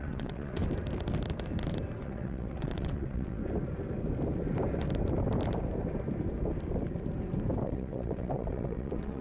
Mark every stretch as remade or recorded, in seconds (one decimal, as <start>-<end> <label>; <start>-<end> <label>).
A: 0.0-0.6 remade; 0.6-2.0 recorded; 2.0-3.4 remade; 3.4-7.6 recorded; 7.6-9.2 remade

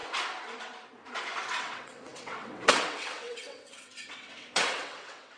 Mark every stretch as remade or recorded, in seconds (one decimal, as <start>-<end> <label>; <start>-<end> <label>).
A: 0.0-1.6 recorded; 1.6-5.4 remade

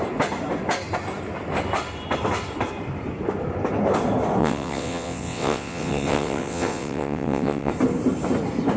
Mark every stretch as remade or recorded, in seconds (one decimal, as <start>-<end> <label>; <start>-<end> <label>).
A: 0.0-4.4 recorded; 4.4-7.7 remade; 7.7-8.8 recorded